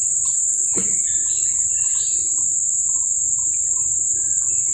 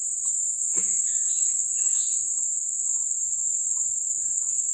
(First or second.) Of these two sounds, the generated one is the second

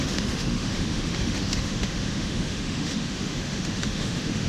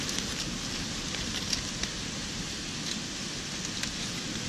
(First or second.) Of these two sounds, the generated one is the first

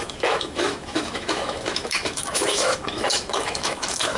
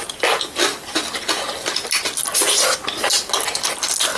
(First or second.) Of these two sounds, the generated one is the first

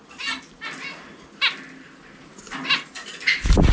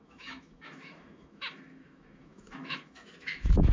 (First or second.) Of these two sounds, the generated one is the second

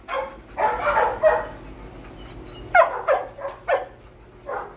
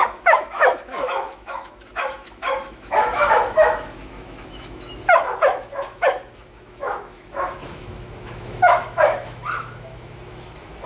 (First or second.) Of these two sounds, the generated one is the second